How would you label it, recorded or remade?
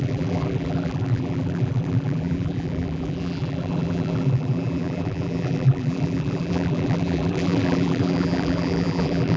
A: remade